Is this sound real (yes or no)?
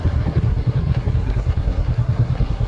no